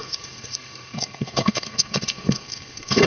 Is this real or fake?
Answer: fake